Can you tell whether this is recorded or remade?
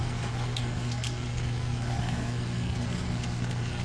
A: remade